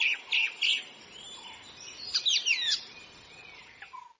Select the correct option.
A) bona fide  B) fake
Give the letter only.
A